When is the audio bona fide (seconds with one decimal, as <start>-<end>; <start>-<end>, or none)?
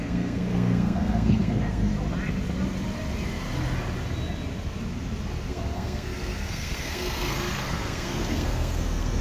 1.9-5.5